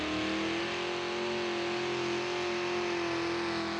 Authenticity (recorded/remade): recorded